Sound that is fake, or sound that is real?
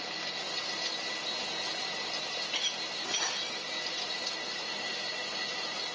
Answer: real